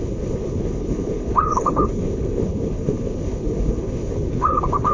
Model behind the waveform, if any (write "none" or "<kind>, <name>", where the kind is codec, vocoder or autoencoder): codec, HILCodec